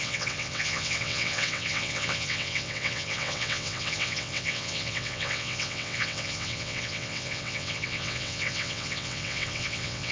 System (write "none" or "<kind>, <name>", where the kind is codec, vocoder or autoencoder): vocoder, WaveNeXt